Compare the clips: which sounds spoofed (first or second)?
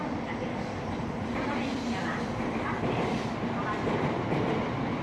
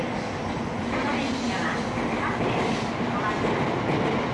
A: first